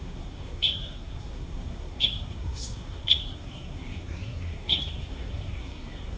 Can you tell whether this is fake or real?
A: fake